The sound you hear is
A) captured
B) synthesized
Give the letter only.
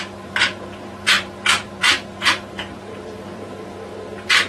B